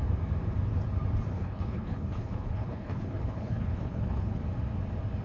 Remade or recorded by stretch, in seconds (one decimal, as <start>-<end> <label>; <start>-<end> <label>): 0.0-1.3 recorded; 1.3-4.4 remade; 4.4-5.2 recorded